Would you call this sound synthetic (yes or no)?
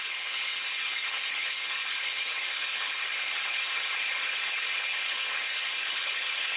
yes